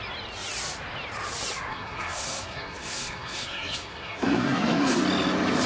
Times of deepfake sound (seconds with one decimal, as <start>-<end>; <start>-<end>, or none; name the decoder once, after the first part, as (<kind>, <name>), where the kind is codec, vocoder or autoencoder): 1.7-5.0 (codec, SNAC)

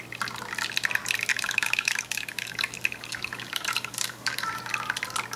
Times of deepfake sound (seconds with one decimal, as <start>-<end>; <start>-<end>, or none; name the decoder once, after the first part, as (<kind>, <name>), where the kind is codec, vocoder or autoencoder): 1.3-4.5 (codec, DAC)

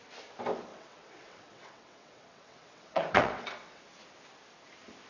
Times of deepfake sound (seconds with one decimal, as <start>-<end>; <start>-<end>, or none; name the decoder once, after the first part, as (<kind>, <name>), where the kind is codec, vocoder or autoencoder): 0.7-3.8 (vocoder, WaveNeXt)

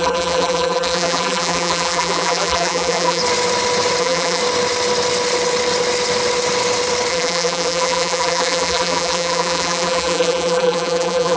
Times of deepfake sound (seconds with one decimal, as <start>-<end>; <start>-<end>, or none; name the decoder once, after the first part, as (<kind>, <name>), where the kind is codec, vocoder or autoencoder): 0.0-3.2 (vocoder, BigVGAN v2); 4.0-4.4; 7.1-11.4

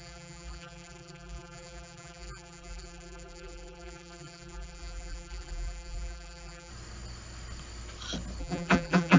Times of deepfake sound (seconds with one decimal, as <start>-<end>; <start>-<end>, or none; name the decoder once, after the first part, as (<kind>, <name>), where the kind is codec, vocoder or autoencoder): 0.0-6.7 (vocoder, BigVGAN v2); 8.4-9.2